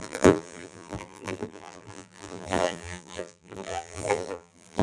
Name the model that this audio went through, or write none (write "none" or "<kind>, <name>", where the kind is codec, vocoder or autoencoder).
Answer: vocoder, BigVGAN v2